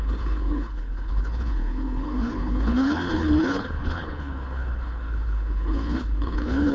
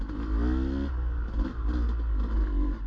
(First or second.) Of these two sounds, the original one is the second